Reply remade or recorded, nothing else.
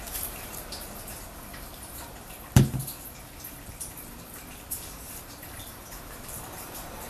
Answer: remade